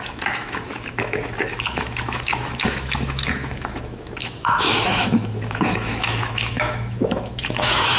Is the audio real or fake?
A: fake